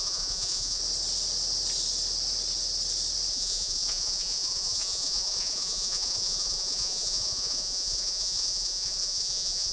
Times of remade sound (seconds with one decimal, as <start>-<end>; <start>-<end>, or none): 0.0-0.8; 3.3-9.7